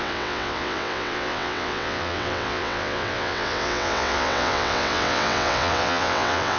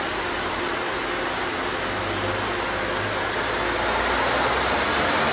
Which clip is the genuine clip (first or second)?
second